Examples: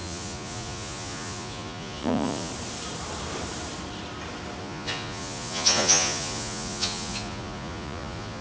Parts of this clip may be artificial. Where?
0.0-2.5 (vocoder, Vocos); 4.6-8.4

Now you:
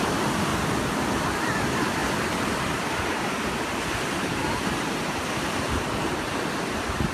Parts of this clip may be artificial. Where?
0.0-0.5 (vocoder, BigVGAN v2); 1.3-4.4; 5.2-7.1

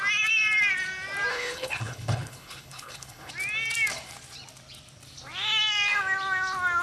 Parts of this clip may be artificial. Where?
1.3-3.3 (codec, HILCodec)

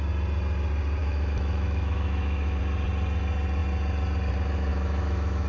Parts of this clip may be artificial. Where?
1.0-2.6 (autoencoder, DAC-VAE); 4.7-5.5

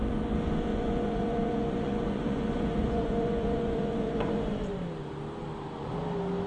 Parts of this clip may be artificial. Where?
0.7-4.6 (vocoder, Vocos)

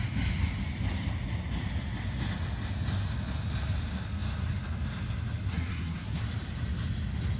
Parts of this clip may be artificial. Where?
5.5-6.2 (codec, SNAC)